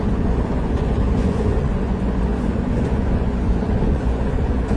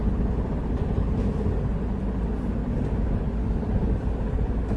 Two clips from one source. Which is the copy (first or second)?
first